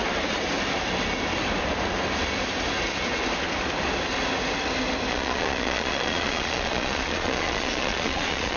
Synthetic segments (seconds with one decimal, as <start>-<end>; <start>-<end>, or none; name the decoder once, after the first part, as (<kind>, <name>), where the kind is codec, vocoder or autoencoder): 5.1-8.6 (vocoder, Vocos)